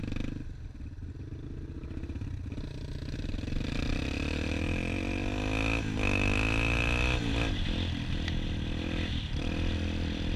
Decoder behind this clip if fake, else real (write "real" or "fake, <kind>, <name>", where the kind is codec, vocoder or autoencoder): real